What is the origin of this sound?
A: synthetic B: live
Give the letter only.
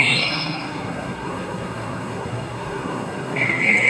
A